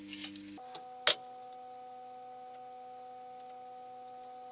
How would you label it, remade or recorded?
recorded